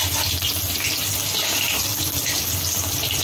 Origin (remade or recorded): recorded